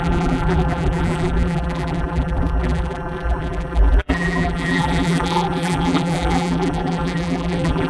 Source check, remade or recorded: remade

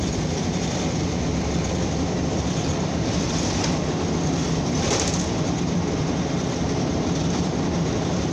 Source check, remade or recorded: remade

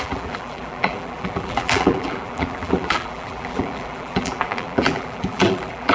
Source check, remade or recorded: remade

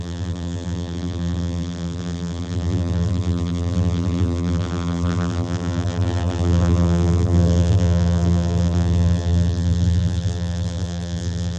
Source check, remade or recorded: remade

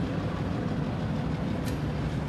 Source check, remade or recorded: remade